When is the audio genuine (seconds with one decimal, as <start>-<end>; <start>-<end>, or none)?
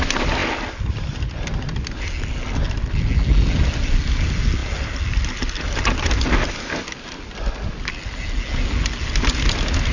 0.0-9.9